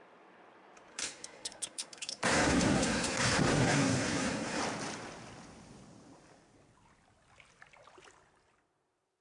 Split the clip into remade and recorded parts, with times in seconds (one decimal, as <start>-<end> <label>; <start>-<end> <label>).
0.0-0.9 recorded; 0.9-4.6 remade; 4.6-9.2 recorded